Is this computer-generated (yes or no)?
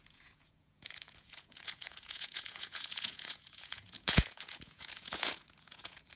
yes